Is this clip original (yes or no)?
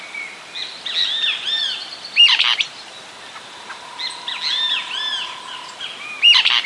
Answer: yes